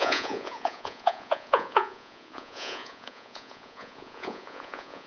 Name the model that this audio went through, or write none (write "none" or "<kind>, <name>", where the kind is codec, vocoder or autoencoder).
vocoder, Vocos